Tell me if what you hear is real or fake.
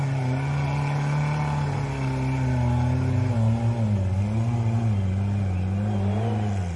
real